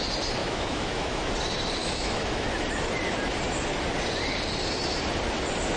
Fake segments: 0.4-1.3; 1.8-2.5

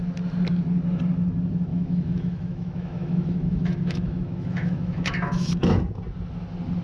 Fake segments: 1.7-5.8

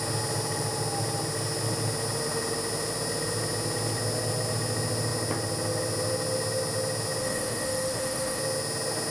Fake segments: 7.2-8.4